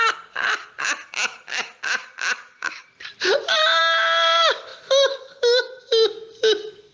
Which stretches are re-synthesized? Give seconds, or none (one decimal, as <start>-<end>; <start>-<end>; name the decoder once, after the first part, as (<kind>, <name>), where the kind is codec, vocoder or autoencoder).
1.5-3.8 (vocoder, BigVGAN v2)